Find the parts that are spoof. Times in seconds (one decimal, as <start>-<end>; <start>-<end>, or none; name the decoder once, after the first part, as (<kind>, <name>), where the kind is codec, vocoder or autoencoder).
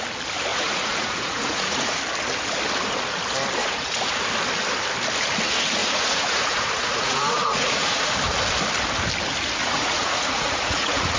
0.5-2.0 (vocoder, Vocos); 3.6-4.2; 5.8-8.1; 9.6-11.2